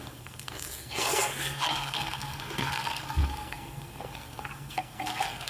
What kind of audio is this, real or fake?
fake